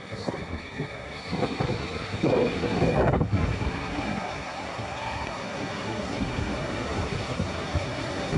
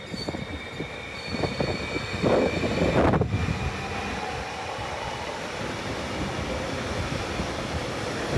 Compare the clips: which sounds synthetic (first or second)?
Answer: first